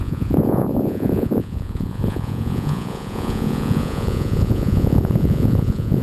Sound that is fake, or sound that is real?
fake